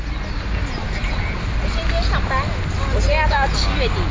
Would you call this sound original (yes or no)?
yes